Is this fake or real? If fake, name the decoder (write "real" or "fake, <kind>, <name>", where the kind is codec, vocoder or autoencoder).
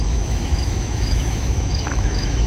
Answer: fake, autoencoder, DAC-VAE